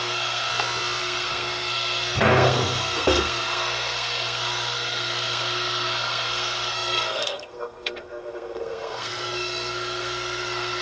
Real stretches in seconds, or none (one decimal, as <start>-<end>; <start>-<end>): 0.5-1.0